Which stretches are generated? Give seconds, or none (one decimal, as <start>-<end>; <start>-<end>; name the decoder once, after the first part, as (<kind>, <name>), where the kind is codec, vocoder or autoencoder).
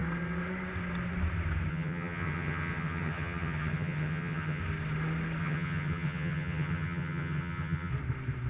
1.7-4.6 (vocoder, HiFi-GAN); 5.4-7.9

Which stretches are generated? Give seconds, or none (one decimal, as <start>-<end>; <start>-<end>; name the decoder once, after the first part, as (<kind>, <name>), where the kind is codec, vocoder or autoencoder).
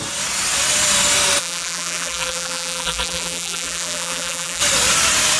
1.4-4.6 (vocoder, BigVGAN v2)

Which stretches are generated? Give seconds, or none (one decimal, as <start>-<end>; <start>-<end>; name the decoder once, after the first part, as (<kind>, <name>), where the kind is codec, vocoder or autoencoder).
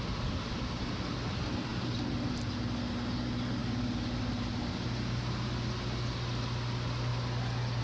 0.0-7.1 (vocoder, BigVGAN v2)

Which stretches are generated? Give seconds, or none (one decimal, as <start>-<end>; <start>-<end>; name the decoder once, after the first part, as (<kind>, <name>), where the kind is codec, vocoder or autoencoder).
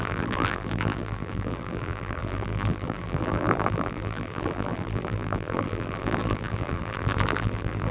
0.0-7.9 (vocoder, BigVGAN v2)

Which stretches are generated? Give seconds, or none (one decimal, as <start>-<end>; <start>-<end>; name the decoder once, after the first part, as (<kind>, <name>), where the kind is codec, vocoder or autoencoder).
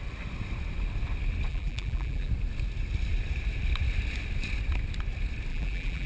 1.5-2.3 (vocoder, BigVGAN v2); 5.5-6.1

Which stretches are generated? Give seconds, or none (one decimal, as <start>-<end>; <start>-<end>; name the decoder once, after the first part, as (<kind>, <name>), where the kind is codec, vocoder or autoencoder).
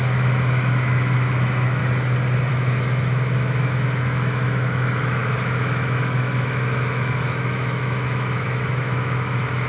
0.0-1.8 (autoencoder, DAC-VAE); 2.5-9.7